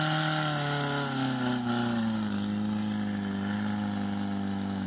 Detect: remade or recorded recorded